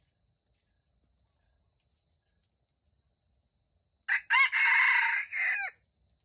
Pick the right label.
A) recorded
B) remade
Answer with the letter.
A